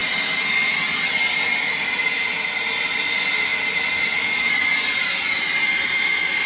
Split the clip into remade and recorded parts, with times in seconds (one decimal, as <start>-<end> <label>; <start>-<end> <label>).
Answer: 0.0-6.5 recorded